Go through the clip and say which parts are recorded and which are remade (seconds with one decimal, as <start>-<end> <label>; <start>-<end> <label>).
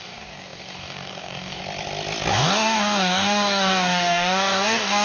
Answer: 0.0-1.6 remade; 1.6-2.3 recorded; 2.3-5.0 remade